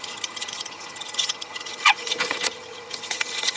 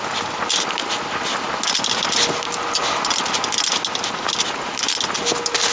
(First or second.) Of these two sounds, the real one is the second